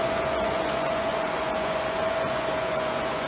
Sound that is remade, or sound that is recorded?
remade